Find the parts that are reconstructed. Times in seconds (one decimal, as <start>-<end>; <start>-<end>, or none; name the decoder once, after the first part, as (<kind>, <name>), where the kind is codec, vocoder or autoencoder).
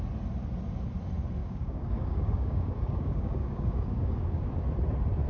1.4-4.6 (codec, DAC)